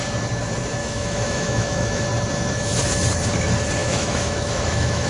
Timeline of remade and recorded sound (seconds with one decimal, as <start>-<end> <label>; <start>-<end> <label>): 0.0-0.8 recorded; 0.8-2.0 remade; 2.0-3.8 recorded; 3.8-5.1 remade